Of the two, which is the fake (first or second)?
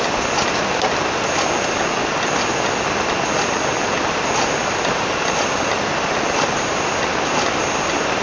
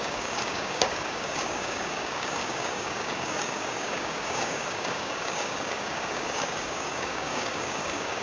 second